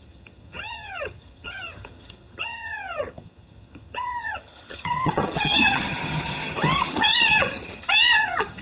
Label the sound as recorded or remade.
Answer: remade